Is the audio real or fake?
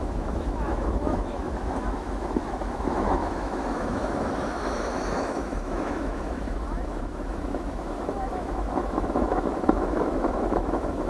fake